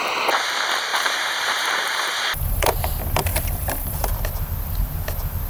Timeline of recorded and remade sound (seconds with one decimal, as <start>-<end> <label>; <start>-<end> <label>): 0.0-0.9 recorded; 0.9-2.7 remade; 2.7-3.3 recorded; 3.3-4.1 remade; 4.1-5.5 recorded